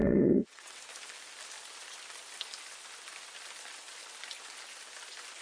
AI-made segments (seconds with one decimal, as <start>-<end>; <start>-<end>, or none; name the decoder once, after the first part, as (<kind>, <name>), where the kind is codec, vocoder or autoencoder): 0.0-0.8 (vocoder, WaveNeXt)